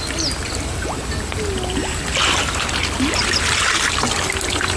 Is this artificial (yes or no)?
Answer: no